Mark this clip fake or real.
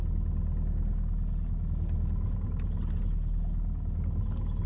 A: real